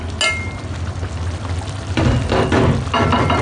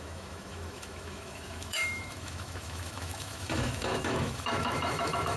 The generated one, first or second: second